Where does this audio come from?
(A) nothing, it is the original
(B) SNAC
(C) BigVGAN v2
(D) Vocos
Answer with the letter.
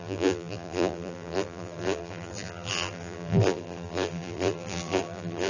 C